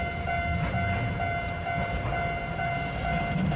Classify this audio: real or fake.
real